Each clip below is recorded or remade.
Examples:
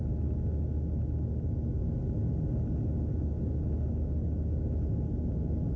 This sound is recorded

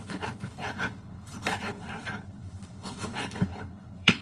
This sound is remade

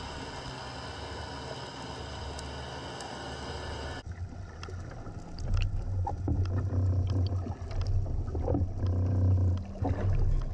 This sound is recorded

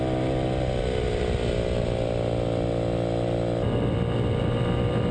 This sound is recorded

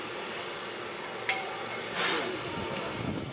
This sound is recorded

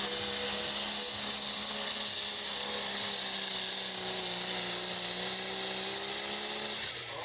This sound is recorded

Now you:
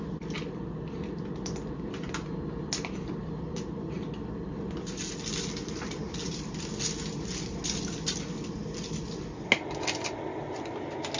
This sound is recorded